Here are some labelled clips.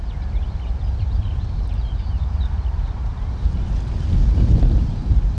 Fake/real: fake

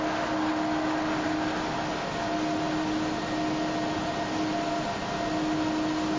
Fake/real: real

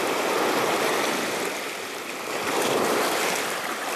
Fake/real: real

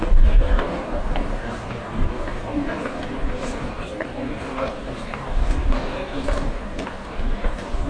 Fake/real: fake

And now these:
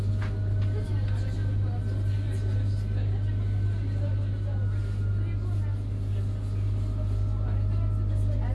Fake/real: real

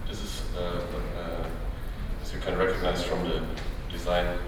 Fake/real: real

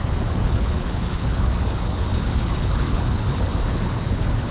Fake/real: fake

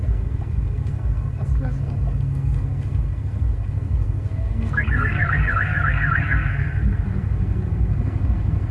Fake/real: fake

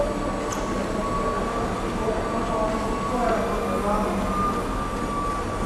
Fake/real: real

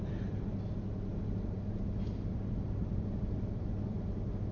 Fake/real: real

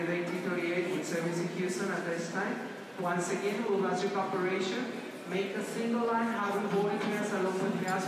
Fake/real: real